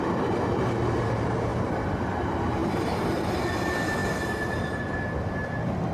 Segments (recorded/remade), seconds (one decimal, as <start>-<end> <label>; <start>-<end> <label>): 0.0-2.6 recorded; 2.6-3.4 remade; 3.4-5.9 recorded